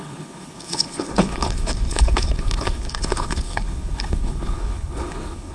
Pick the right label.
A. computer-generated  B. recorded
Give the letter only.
A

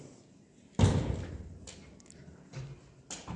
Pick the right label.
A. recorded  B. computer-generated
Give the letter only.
A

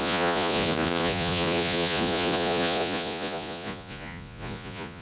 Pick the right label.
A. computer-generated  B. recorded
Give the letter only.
A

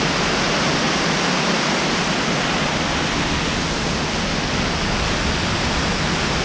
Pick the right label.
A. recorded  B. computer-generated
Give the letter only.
A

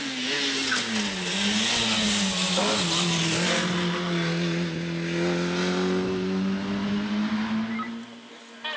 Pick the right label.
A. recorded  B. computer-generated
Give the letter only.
A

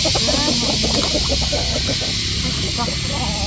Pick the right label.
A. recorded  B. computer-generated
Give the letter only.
A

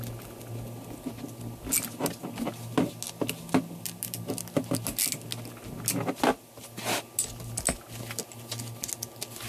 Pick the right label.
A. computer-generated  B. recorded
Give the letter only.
B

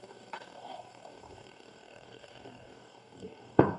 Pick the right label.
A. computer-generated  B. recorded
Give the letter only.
A